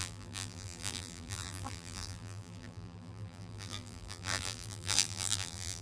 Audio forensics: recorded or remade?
remade